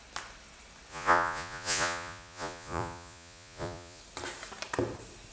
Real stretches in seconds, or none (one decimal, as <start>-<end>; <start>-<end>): 0.0-0.9; 4.0-5.3

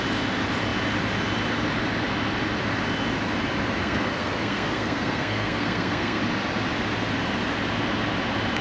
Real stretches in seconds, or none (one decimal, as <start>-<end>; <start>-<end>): 0.0-3.8; 6.2-8.6

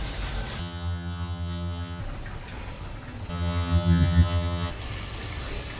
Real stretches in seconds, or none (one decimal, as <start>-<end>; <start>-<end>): 0.0-0.6; 2.0-3.3; 4.7-5.8

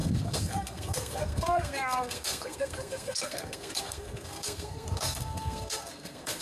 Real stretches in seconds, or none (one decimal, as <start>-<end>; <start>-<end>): none